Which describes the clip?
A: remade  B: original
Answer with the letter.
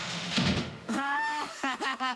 A